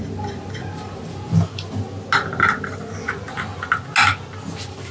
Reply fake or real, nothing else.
real